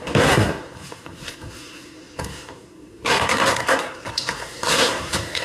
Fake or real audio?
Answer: fake